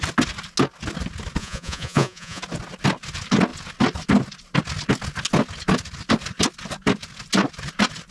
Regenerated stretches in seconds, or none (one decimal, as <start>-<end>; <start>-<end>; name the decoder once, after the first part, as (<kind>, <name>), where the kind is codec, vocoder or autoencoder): 1.4-2.4 (vocoder, Vocos)